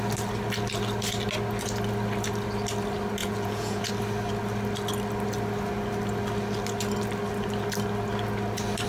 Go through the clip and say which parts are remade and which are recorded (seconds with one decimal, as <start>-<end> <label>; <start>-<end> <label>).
0.0-3.2 recorded; 3.2-3.9 remade; 3.9-8.9 recorded